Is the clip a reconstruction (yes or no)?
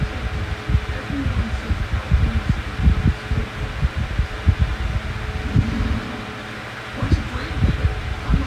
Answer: no